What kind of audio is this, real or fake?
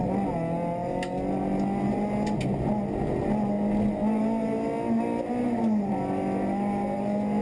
real